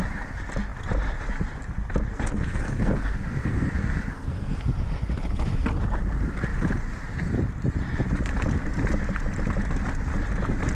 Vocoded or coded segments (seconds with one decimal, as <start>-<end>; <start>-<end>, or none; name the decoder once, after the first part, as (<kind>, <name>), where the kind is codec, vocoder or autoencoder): 2.1-4.6 (codec, SNAC)